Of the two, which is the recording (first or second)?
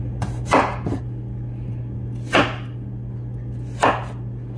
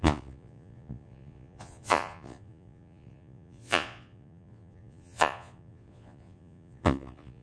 first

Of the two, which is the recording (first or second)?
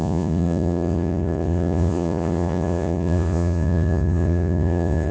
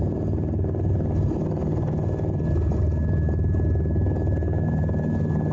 second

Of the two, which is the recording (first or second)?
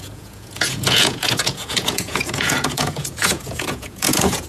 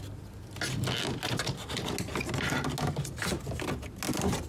second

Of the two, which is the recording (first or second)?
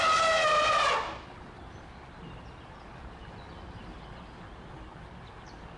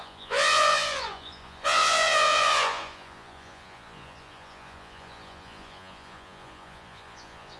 first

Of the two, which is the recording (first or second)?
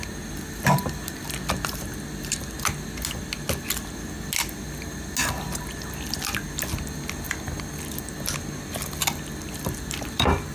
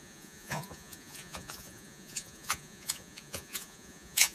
first